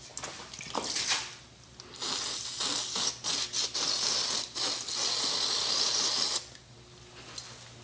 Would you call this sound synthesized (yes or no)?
no